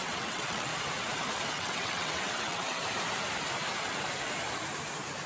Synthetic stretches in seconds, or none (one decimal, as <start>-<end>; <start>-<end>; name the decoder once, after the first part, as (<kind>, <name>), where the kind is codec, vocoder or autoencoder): 0.0-0.7 (vocoder, WaveNeXt); 1.5-2.8